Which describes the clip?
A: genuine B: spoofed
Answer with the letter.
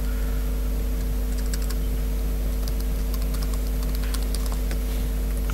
A